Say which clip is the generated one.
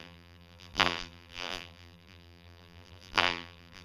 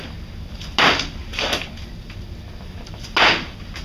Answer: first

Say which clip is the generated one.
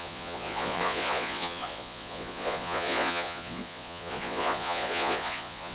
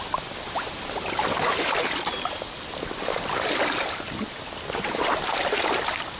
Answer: first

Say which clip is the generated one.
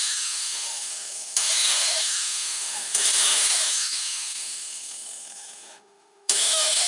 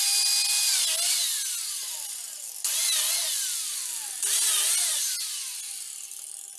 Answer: first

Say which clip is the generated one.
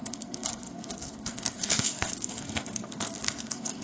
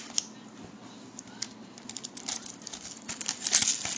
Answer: first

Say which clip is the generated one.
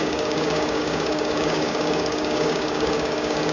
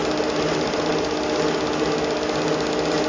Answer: first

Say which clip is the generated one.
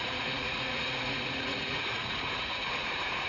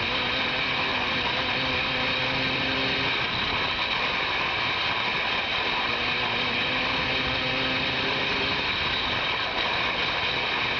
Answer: first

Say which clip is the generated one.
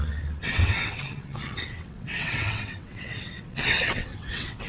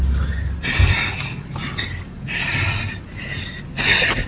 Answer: first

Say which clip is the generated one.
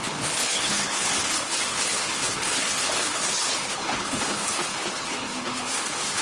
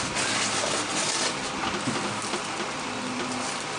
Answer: first